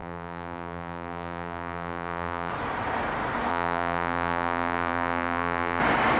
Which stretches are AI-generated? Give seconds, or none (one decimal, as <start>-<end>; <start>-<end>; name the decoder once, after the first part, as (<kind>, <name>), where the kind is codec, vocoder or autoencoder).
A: 0.0-2.5 (vocoder, BigVGAN v2); 3.5-5.8